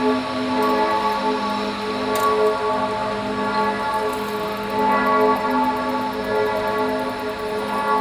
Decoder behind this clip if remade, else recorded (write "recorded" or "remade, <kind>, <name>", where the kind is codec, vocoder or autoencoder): recorded